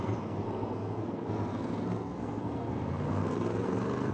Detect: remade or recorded remade